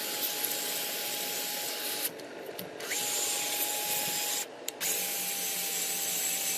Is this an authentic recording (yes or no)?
yes